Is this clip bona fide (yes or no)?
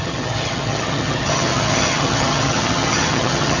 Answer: no